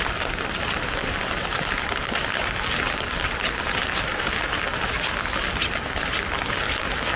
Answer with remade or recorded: recorded